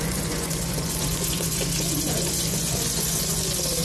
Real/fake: fake